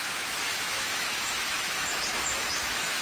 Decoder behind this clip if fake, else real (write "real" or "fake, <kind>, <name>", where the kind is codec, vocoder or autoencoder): fake, autoencoder, DAC-VAE